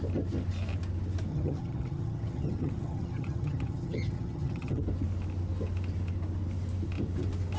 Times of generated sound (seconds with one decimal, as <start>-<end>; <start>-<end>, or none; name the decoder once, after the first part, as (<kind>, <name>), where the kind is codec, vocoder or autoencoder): 1.3-4.8 (vocoder, HiFi-GAN)